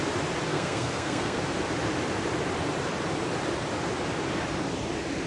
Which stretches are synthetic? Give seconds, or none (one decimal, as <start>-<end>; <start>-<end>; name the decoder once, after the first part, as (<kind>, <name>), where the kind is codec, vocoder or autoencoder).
0.5-1.4 (codec, SNAC)